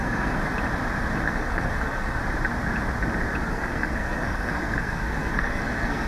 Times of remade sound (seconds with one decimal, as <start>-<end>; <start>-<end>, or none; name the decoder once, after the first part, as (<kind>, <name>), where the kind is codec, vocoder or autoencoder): 0.0-0.4 (codec, SNAC); 1.2-2.2; 3.5-6.1